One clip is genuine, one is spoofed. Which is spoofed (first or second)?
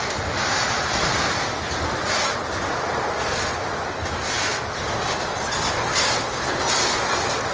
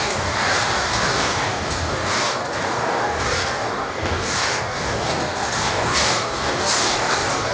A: second